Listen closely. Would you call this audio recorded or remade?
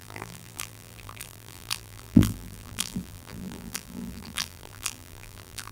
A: remade